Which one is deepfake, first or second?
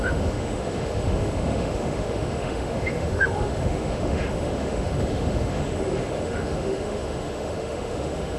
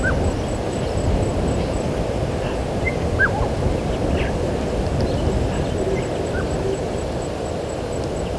first